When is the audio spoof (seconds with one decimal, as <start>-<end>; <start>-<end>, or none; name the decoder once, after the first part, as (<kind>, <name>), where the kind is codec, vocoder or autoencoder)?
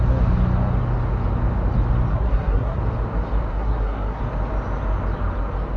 2.1-2.8 (codec, SNAC); 3.5-4.2